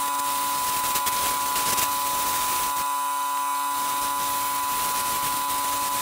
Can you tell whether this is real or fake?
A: real